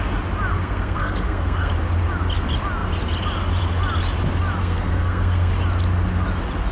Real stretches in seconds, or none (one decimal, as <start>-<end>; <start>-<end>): 0.0-0.5; 1.7-4.6; 5.5-6.7